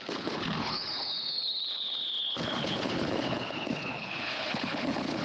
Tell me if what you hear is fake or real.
fake